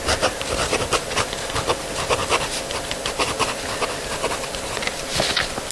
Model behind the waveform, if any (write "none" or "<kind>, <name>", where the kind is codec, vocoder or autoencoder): none